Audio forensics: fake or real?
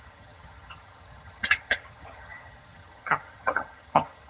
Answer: fake